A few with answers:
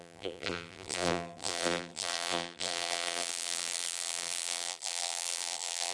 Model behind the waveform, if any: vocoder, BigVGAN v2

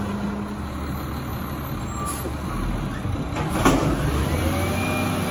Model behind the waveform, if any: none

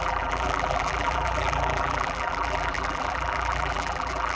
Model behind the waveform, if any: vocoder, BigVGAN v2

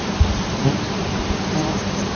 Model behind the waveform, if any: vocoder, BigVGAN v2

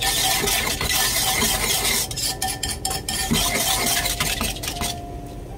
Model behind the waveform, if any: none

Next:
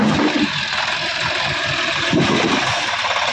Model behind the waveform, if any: vocoder, BigVGAN v2